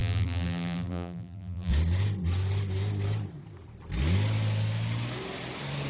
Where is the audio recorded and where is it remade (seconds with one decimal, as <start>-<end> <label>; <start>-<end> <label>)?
0.0-1.7 remade; 1.7-5.9 recorded